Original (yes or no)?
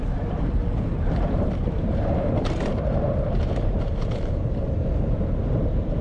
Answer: no